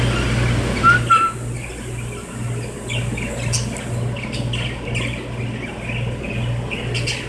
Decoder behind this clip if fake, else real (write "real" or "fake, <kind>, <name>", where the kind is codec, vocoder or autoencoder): real